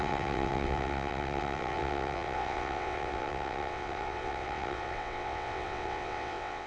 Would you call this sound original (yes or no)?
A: no